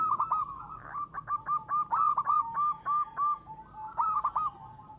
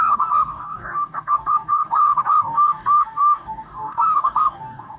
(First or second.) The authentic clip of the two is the first